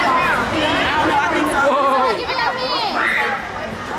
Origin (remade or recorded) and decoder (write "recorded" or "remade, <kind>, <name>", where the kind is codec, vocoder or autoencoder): recorded